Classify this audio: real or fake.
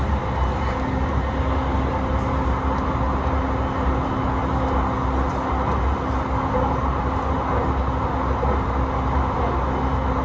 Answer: real